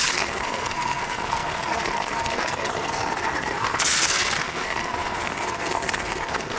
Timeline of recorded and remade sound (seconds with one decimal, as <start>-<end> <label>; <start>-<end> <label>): 0.0-6.6 remade